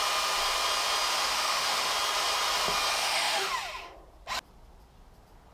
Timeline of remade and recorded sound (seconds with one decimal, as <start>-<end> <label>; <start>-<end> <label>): 0.0-1.1 recorded; 1.1-1.9 remade; 1.9-3.0 recorded; 3.0-3.5 remade; 3.5-5.5 recorded

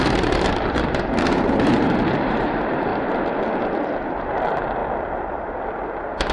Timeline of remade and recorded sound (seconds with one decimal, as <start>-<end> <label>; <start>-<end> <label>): 0.0-2.9 remade; 2.9-4.3 recorded; 4.3-4.8 remade; 4.8-6.3 recorded

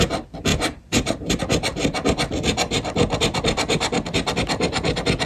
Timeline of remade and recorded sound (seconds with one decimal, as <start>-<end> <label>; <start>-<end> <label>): 0.0-0.5 recorded; 0.5-1.4 remade; 1.4-5.3 recorded

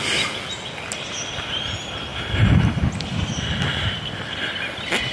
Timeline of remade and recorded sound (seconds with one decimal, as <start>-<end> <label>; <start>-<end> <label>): 0.0-5.1 recorded

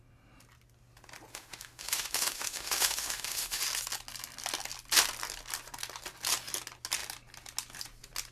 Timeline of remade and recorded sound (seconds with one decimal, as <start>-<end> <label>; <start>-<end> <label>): 0.0-1.3 recorded; 1.3-3.6 remade; 3.6-8.3 recorded